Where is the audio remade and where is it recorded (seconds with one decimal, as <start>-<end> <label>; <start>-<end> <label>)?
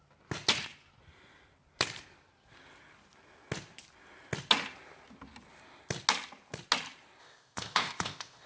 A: 0.0-7.2 recorded; 7.2-8.5 remade